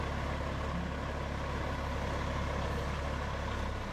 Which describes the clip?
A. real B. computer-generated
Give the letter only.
A